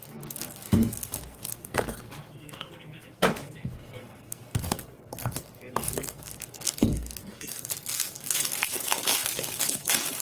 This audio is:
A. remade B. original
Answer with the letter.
A